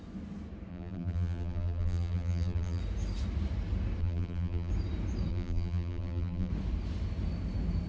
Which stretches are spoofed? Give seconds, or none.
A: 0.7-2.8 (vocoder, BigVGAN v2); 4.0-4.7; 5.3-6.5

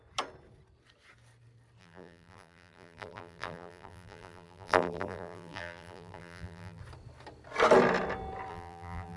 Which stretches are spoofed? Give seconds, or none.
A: 1.8-6.8 (vocoder, BigVGAN v2); 8.5-9.2

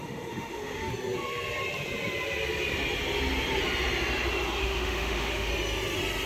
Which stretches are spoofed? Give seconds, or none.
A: 0.0-0.9 (autoencoder, DAC-VAE); 4.6-5.5

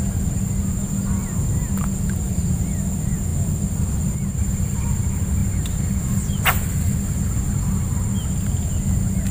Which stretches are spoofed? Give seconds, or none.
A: none

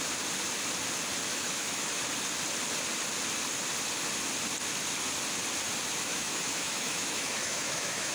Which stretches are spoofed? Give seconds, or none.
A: 1.3-2.0 (autoencoder, DAC-VAE); 6.1-8.1

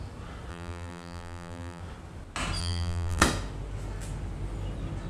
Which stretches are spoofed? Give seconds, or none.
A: 0.5-1.8 (vocoder, BigVGAN v2); 2.6-3.2

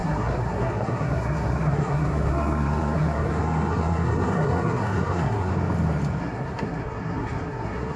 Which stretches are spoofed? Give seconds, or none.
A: 0.0-5.5 (codec, SNAC); 6.2-8.0

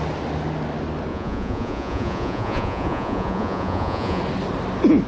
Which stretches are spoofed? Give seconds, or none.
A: 1.1-4.2 (vocoder, Vocos)